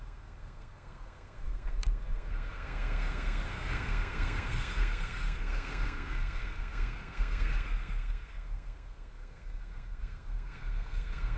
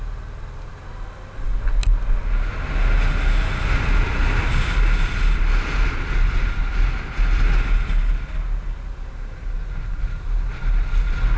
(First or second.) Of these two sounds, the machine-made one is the first